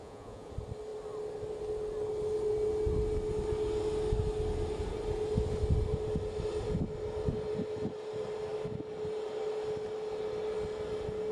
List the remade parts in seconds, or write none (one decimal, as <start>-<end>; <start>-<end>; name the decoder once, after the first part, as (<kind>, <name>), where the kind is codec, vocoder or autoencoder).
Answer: 0.0-0.5 (vocoder, Vocos)